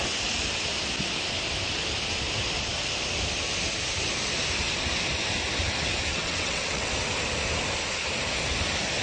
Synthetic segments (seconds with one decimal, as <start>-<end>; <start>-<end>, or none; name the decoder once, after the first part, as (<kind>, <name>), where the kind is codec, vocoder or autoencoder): 6.1-6.9 (vocoder, WaveNeXt)